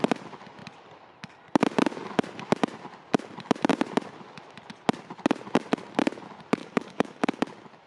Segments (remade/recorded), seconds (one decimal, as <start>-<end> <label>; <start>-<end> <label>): 0.0-6.6 recorded; 6.6-7.4 remade; 7.4-7.9 recorded